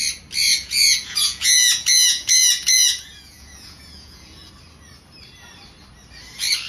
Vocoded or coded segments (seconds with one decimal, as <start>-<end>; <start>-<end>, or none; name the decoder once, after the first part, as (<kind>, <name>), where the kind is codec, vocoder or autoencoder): 0.5-4.5 (vocoder, Vocos)